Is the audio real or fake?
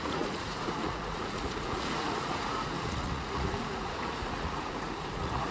fake